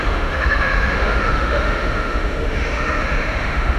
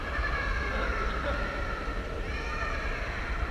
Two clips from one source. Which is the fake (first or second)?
first